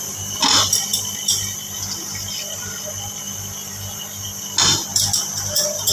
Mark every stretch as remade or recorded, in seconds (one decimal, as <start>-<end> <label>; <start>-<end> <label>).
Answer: 0.0-5.9 recorded